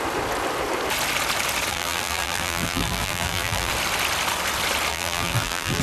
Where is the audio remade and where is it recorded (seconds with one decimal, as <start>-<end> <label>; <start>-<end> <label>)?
0.0-1.7 recorded; 1.7-3.7 remade; 3.7-4.9 recorded; 4.9-5.8 remade